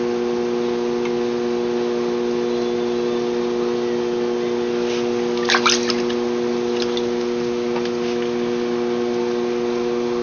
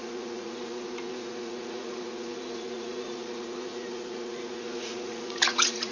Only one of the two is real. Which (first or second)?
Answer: first